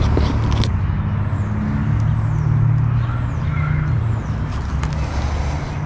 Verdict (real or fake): real